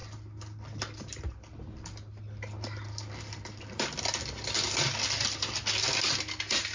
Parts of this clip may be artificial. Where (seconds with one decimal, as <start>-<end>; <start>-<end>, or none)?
none